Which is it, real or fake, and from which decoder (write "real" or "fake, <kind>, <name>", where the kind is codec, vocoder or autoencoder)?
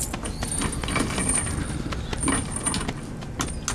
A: real